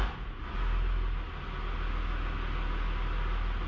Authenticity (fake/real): real